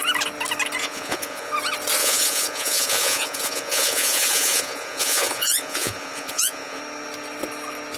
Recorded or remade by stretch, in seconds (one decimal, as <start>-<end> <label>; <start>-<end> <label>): 0.0-0.8 recorded; 0.8-1.5 remade; 1.5-2.0 recorded; 2.0-6.8 remade; 6.8-8.0 recorded

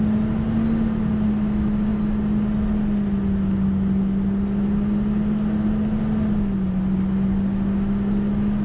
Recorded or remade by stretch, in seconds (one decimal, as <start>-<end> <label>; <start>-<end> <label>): 0.0-8.6 recorded

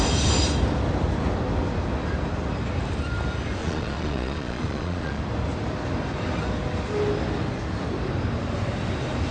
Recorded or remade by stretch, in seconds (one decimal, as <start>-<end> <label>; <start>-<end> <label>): 0.0-3.6 recorded; 3.6-5.2 remade; 5.2-9.3 recorded

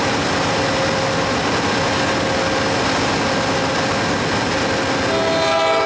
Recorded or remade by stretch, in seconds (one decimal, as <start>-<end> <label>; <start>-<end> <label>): 0.0-5.9 recorded

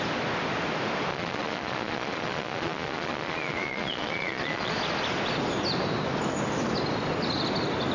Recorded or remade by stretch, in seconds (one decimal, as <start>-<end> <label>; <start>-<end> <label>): 0.0-1.1 recorded; 1.1-4.7 remade; 4.7-7.9 recorded

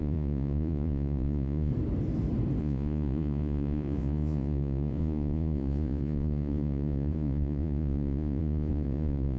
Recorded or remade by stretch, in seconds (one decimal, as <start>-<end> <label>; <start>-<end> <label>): 0.0-1.7 remade; 1.7-2.6 recorded; 2.6-9.4 remade